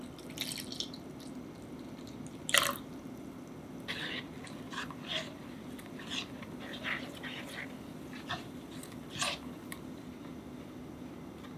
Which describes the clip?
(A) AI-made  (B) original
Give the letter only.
B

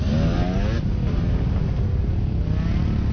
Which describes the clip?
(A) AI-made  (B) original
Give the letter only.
B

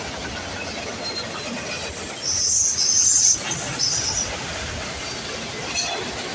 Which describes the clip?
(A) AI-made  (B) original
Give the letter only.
B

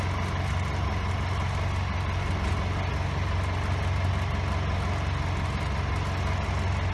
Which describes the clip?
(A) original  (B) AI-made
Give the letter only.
A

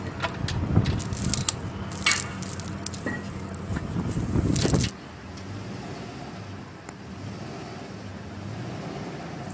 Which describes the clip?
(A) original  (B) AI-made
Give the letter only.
A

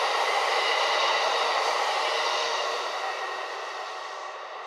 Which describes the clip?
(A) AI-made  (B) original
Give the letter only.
B